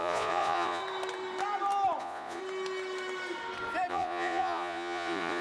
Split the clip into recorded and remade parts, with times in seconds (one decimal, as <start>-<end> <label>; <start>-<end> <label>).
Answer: 0.0-0.8 remade; 0.8-2.0 recorded; 2.0-2.4 remade; 2.4-3.9 recorded; 3.9-5.4 remade